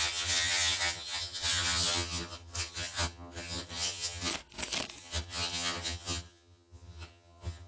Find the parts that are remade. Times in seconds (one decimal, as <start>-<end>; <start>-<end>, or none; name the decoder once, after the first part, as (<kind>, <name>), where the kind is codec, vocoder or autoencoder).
0.0-4.3 (vocoder, HiFi-GAN); 5.0-7.7